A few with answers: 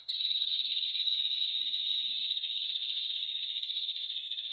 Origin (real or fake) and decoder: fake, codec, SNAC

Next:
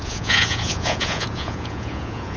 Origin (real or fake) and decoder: fake, vocoder, Vocos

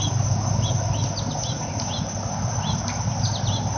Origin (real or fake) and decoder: real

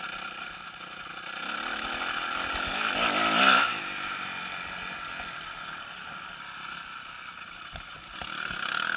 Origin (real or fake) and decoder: real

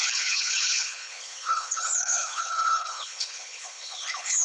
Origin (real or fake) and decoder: fake, codec, HILCodec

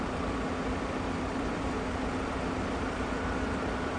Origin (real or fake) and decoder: real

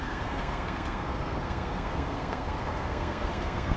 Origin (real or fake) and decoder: fake, codec, SNAC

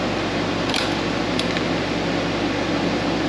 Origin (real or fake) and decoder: real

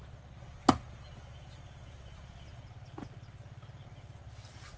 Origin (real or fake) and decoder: real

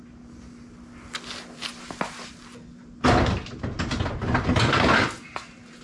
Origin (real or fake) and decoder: real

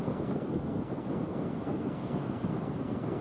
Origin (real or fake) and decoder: fake, codec, SNAC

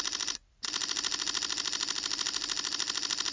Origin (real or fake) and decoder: real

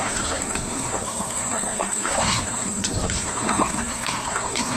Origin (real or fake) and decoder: fake, codec, SNAC